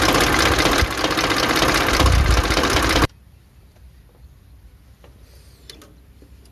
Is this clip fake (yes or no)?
no